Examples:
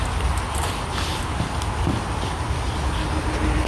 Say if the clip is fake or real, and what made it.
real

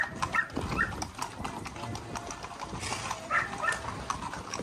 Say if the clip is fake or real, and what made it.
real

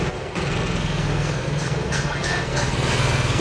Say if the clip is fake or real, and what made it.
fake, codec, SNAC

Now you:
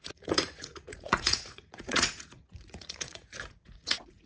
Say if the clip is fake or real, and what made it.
fake, vocoder, Vocos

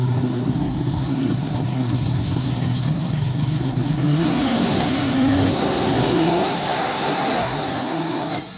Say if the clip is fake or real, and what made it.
fake, codec, SNAC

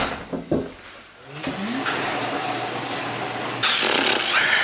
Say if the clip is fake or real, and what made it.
real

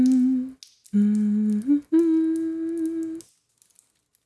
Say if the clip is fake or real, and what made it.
real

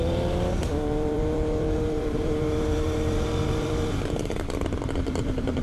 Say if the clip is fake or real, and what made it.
fake, vocoder, BigVGAN v2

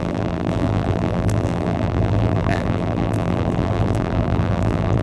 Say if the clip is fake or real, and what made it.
fake, vocoder, BigVGAN v2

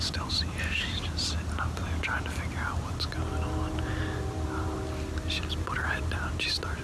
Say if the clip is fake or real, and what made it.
real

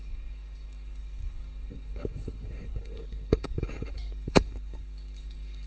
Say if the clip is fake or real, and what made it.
fake, codec, DAC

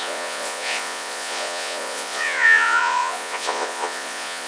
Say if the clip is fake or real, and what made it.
fake, vocoder, Vocos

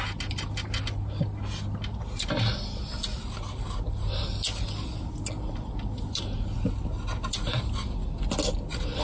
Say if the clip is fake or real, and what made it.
real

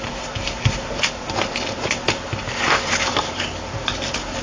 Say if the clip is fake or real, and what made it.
real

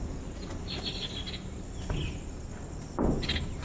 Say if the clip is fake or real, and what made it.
real